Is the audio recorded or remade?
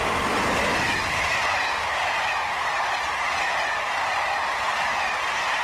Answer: recorded